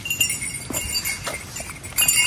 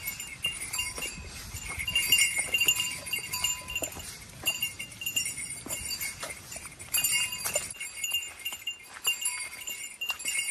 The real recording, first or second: first